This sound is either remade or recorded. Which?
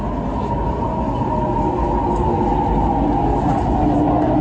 recorded